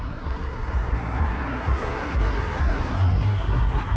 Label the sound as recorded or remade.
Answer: remade